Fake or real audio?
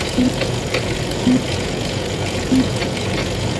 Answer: fake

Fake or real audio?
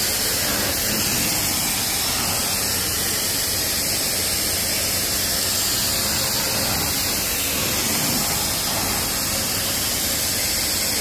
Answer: real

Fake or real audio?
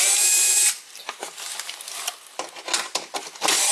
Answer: real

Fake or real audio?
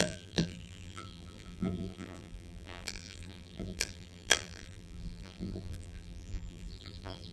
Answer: fake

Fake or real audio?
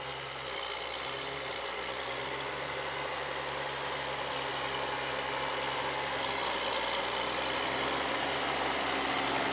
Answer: real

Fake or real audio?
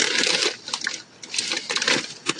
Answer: real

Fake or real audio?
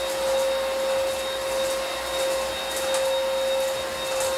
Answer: real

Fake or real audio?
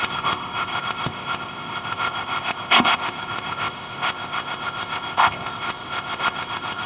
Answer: fake